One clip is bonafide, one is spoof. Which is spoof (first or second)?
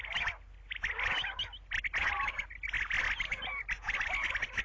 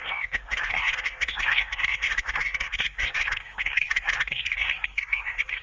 second